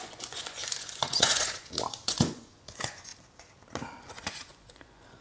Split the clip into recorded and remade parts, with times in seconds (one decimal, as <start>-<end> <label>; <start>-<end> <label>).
0.0-3.1 remade; 3.1-4.0 recorded; 4.0-5.2 remade